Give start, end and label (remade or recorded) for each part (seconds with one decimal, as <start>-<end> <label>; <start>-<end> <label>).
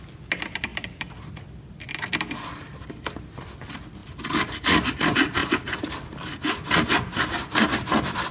0.0-0.7 recorded; 0.7-1.3 remade; 1.3-5.4 recorded; 5.4-6.5 remade; 6.5-8.3 recorded